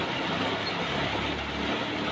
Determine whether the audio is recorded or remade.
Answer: recorded